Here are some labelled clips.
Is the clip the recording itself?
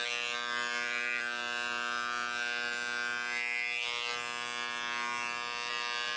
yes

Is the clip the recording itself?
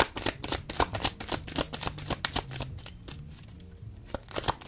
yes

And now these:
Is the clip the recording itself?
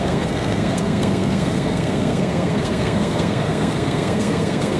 no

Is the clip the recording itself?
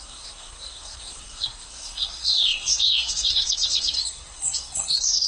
no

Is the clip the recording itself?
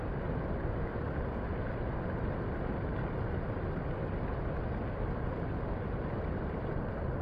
yes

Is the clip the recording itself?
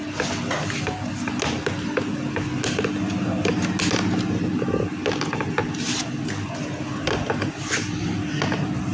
yes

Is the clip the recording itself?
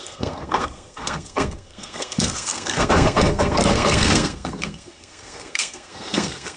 no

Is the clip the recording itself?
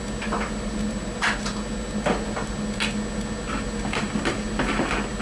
yes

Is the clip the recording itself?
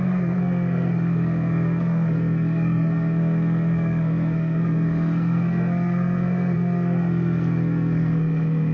no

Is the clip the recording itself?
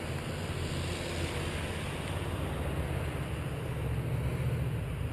yes